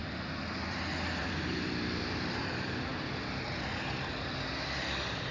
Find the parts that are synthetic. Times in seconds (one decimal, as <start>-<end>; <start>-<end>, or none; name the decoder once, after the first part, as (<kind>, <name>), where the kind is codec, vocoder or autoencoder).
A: 1.2-2.9 (vocoder, BigVGAN v2); 4.0-5.3